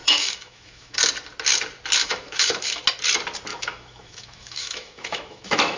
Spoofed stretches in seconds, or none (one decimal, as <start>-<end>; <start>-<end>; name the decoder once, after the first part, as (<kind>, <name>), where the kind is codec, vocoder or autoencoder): 0.0-1.0 (autoencoder, DAC-VAE); 2.0-2.8; 3.5-5.8